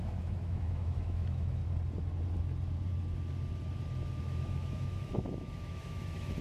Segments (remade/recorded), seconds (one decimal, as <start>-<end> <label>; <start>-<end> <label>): 0.0-1.6 remade; 1.6-4.2 recorded; 4.2-6.4 remade